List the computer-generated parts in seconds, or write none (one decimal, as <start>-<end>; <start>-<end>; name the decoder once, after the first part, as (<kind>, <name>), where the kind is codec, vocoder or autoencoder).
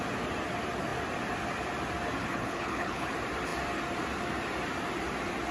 2.2-3.1 (codec, HILCodec)